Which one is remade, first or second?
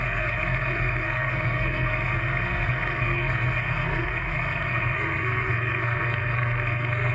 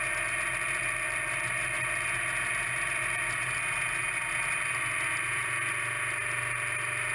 first